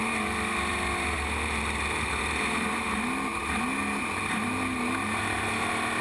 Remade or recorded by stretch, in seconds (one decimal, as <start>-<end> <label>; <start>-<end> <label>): 0.0-6.0 recorded

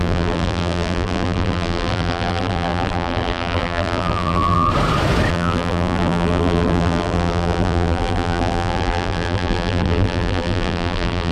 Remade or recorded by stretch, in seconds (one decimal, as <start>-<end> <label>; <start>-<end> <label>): 0.0-4.7 remade; 4.7-5.3 recorded; 5.3-11.3 remade

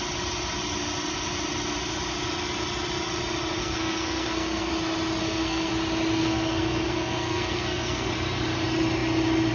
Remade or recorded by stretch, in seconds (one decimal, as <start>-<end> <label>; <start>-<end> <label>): 0.0-3.6 recorded; 3.6-4.7 remade; 4.7-5.2 recorded; 5.2-5.7 remade; 5.7-6.2 recorded; 6.2-8.1 remade; 8.1-9.5 recorded

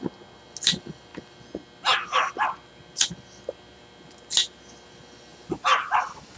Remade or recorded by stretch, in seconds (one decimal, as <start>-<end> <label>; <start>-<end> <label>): 0.0-5.3 recorded; 5.3-6.0 remade; 6.0-6.4 recorded